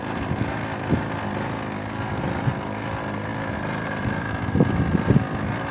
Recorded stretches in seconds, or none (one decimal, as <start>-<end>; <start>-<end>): 0.0-5.7